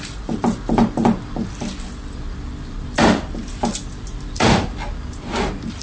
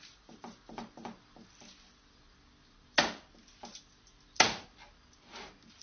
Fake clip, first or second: first